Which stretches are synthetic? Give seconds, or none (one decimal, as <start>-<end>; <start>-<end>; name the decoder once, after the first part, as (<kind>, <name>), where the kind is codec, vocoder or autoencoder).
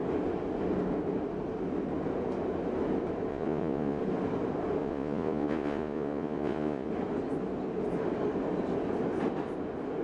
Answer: 3.3-4.0 (vocoder, Vocos); 4.8-6.9